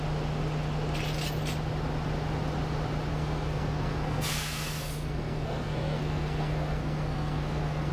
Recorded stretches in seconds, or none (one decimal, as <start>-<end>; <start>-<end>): 0.0-3.1